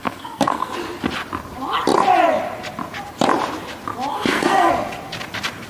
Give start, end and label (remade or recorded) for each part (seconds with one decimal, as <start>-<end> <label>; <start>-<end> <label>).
0.0-0.7 remade; 0.7-4.1 recorded; 4.1-4.7 remade; 4.7-5.7 recorded